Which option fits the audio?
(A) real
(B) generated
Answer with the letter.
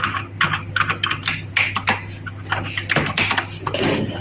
A